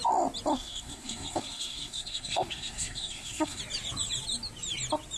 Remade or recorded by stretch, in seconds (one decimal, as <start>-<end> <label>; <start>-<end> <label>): 0.0-0.5 recorded; 0.5-3.6 remade; 3.6-5.2 recorded